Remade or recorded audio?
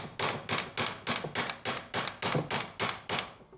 recorded